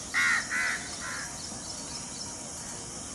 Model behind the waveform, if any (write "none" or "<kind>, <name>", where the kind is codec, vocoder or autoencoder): none